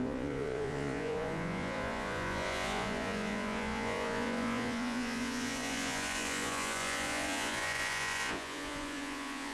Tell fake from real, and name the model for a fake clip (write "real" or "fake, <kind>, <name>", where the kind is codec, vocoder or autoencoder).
fake, vocoder, Vocos